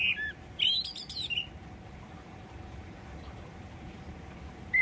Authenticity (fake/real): real